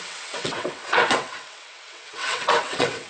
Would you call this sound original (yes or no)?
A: no